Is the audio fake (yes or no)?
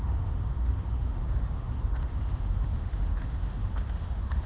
yes